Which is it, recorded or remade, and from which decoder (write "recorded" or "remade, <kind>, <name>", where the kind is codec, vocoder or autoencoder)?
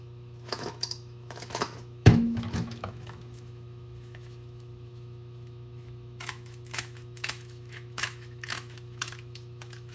remade, autoencoder, DAC-VAE